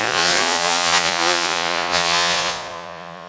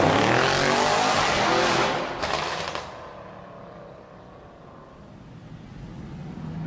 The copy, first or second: first